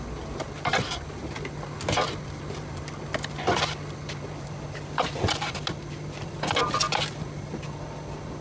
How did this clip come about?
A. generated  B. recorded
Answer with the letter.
B